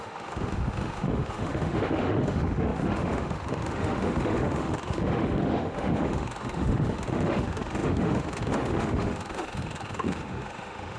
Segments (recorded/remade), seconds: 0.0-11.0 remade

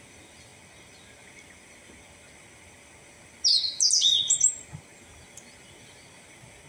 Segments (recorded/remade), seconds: 0.0-6.7 recorded

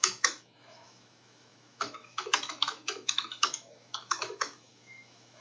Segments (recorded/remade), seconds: 0.0-5.4 remade

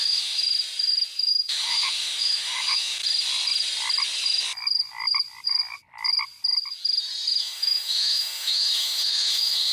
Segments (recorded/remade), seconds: 0.0-0.4 remade; 0.4-1.3 recorded; 1.3-3.0 remade; 3.0-7.4 recorded; 7.4-9.7 remade

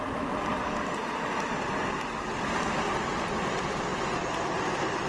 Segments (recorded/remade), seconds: 0.0-5.1 recorded

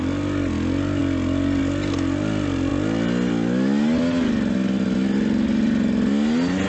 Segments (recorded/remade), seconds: 0.0-6.7 recorded

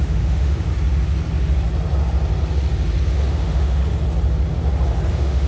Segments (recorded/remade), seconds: 0.0-0.7 remade; 0.7-3.3 recorded; 3.3-3.8 remade; 3.8-5.1 recorded; 5.1-5.5 remade